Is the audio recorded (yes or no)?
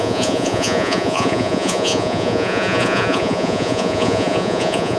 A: no